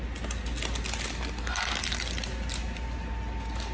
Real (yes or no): yes